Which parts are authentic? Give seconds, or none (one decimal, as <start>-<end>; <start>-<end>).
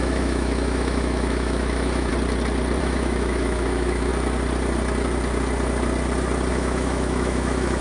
2.1-2.8; 4.1-6.5